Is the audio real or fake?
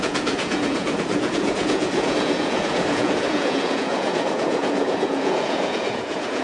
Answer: fake